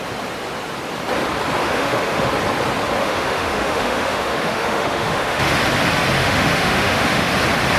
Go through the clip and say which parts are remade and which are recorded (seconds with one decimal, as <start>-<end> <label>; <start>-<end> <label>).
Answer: 0.0-1.6 recorded; 1.6-2.3 remade; 2.3-3.0 recorded; 3.0-5.5 remade; 5.5-6.2 recorded; 6.2-7.3 remade; 7.3-7.8 recorded

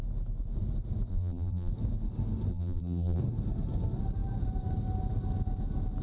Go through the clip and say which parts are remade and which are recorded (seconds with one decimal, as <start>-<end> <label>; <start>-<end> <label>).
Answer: 0.0-1.1 recorded; 1.1-1.7 remade; 1.7-2.5 recorded; 2.5-3.2 remade; 3.2-6.0 recorded